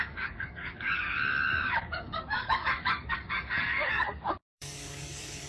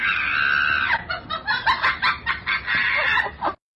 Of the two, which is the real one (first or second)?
second